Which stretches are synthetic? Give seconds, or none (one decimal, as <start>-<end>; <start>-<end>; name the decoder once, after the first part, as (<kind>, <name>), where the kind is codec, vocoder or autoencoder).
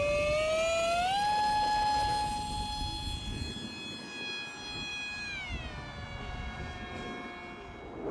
none